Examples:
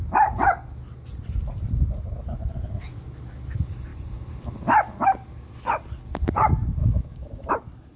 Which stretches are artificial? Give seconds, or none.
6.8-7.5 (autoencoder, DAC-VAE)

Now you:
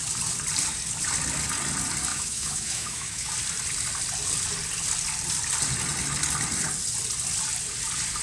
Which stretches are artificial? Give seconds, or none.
2.1-3.3 (autoencoder, DAC-VAE)

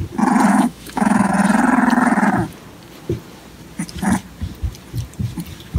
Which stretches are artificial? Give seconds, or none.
0.5-1.3 (autoencoder, DAC-VAE)

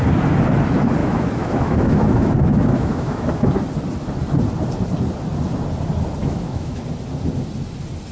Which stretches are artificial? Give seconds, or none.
1.0-3.5 (autoencoder, DAC-VAE); 6.2-6.8

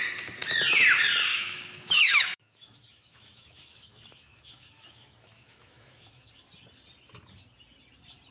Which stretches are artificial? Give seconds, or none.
1.3-6.3 (autoencoder, DAC-VAE)

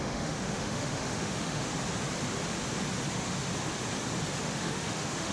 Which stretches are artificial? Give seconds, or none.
0.0-1.7 (autoencoder, DAC-VAE); 3.1-3.5; 4.4-5.3

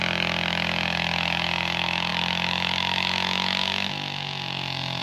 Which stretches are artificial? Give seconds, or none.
0.0-5.0 (autoencoder, DAC-VAE)